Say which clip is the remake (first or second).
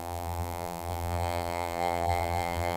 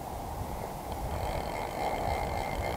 first